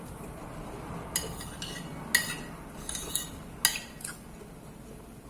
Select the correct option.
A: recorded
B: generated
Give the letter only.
A